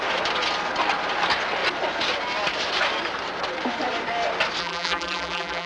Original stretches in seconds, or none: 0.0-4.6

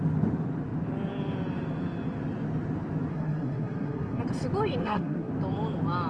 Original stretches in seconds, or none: 0.0-3.1; 4.2-4.8; 5.3-6.1